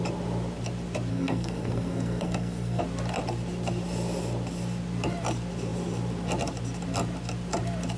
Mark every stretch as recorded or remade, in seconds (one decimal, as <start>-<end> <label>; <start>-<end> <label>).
0.0-1.1 recorded; 1.1-2.8 remade; 2.8-8.0 recorded